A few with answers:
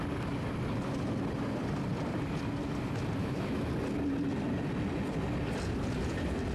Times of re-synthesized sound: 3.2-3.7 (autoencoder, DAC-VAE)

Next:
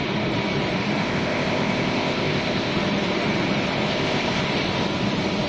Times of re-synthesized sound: 1.0-2.7 (codec, ZipCodec); 3.9-4.4

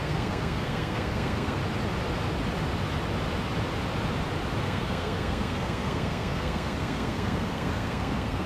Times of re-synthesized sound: 0.0-1.6 (codec, SNAC); 4.6-8.5

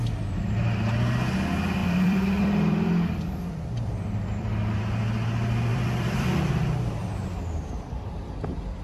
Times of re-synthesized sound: 1.8-4.8 (vocoder, BigVGAN v2); 5.7-6.5

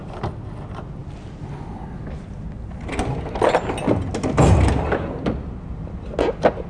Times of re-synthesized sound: none

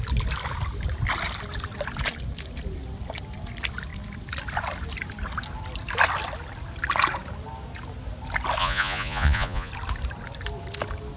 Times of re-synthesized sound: 8.6-9.7 (vocoder, Vocos)

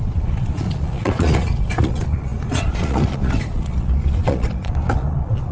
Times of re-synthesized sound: 0.0-5.5 (vocoder, Vocos)

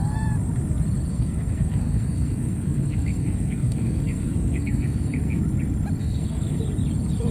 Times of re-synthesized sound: 1.1-5.4 (codec, SNAC); 6.0-6.6